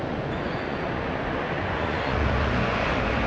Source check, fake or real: fake